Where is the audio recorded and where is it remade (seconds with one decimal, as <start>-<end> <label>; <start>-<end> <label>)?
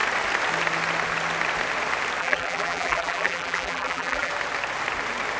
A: 0.0-2.2 recorded; 2.2-4.3 remade; 4.3-5.4 recorded